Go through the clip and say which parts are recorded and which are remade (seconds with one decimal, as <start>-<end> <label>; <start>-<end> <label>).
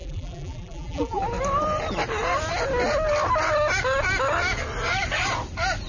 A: 0.0-1.2 remade; 1.2-5.9 recorded